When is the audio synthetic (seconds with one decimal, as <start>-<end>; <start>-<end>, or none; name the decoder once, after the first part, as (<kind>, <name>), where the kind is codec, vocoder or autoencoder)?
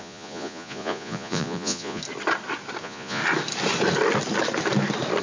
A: 0.0-2.0 (vocoder, Vocos); 2.8-3.2